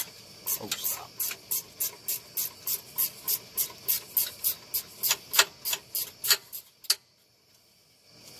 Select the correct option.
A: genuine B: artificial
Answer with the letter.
A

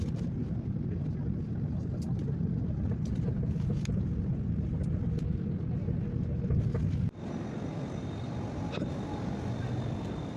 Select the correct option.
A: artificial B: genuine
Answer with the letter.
B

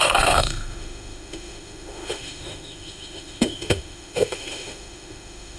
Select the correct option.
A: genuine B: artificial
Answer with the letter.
B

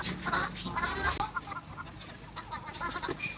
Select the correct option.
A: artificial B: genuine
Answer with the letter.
B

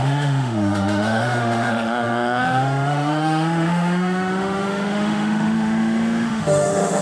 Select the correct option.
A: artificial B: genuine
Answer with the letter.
A